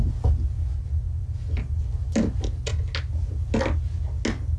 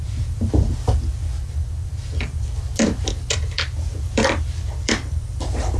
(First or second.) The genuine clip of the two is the first